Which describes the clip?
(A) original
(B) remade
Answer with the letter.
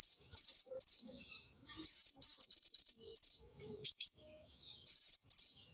B